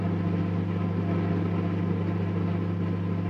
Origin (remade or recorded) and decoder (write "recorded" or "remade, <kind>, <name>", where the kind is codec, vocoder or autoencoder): recorded